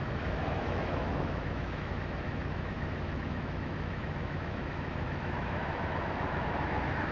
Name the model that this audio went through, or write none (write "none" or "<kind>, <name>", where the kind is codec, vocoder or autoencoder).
autoencoder, DAC-VAE